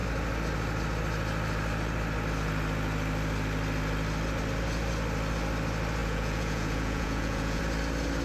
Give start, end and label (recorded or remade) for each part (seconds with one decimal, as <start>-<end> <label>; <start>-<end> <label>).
0.0-6.0 recorded; 6.0-7.6 remade; 7.6-8.2 recorded